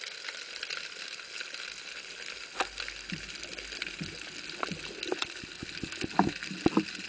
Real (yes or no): yes